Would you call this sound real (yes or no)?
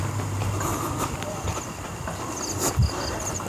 yes